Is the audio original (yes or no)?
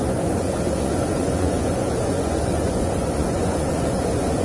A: no